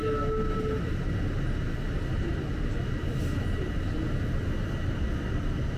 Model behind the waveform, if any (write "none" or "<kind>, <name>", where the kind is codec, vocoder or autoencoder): none